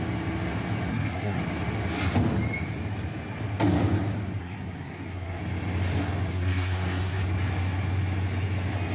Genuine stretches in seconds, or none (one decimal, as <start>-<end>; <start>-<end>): 0.0-0.9; 1.4-4.4; 5.4-6.3; 7.2-8.9